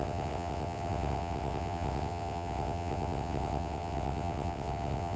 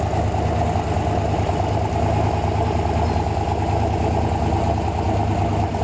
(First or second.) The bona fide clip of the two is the second